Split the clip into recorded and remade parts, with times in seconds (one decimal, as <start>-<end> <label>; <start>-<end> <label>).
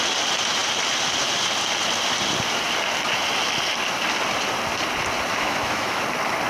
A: 0.0-5.3 recorded; 5.3-6.0 remade; 6.0-6.5 recorded